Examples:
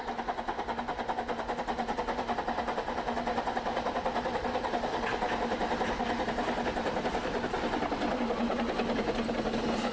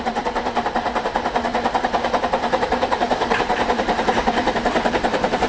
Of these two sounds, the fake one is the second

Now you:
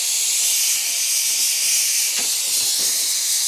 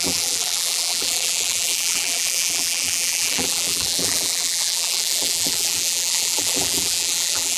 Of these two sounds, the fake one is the second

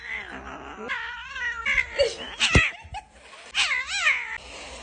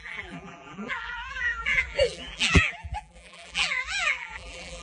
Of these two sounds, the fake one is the second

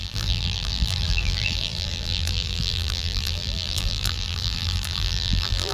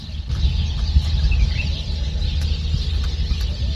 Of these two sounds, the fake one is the first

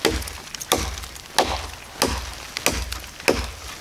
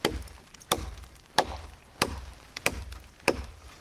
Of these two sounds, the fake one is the second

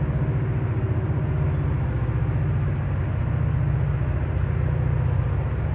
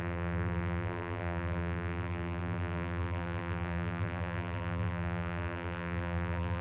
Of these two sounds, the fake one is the second